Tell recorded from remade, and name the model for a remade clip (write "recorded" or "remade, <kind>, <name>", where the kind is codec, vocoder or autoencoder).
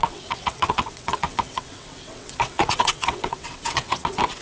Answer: remade, vocoder, WaveNeXt